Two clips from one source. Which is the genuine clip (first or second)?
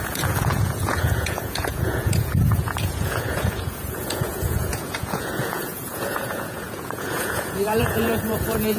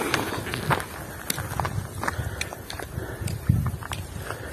second